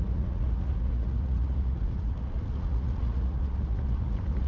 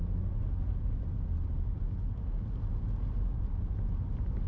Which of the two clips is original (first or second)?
second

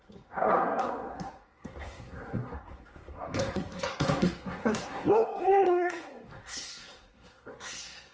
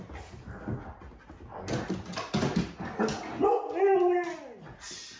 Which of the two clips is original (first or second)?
second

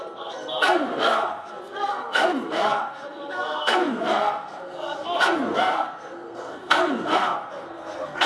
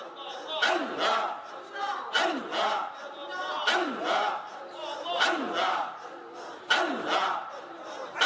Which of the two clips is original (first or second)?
second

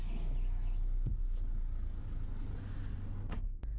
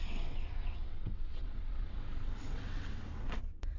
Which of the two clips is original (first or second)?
first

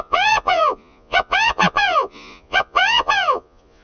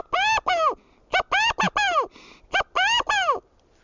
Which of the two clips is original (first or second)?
second